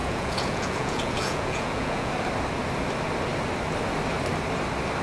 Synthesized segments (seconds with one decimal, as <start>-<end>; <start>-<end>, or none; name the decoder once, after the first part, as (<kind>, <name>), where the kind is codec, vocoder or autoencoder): 0.0-2.1 (vocoder, Vocos)